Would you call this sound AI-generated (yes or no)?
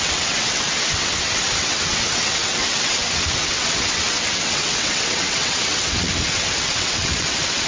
yes